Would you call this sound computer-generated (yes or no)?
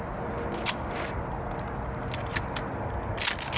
no